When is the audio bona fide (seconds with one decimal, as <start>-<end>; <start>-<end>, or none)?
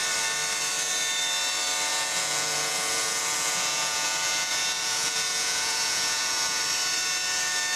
0.0-1.9; 6.6-7.8